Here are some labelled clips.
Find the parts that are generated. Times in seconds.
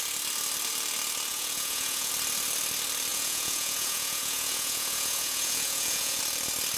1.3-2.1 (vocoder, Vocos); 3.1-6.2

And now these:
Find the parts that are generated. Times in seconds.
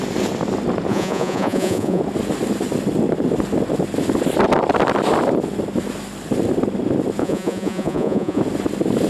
0.9-2.0 (vocoder, Vocos); 7.2-8.4